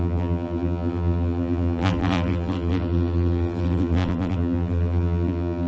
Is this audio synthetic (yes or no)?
yes